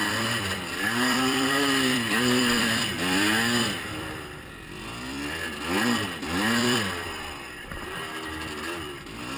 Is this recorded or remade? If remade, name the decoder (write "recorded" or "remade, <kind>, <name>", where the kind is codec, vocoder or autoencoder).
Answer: remade, vocoder, BigVGAN v2